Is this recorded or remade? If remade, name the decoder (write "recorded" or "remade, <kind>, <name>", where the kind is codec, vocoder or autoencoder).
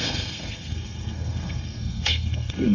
remade, codec, SNAC